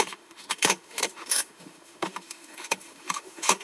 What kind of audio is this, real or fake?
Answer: fake